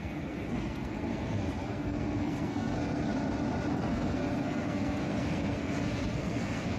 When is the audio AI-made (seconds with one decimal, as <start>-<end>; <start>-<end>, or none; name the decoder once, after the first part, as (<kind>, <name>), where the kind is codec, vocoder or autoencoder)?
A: 0.0-3.1 (codec, SNAC); 3.7-6.8